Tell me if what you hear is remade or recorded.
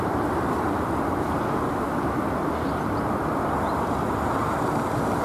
recorded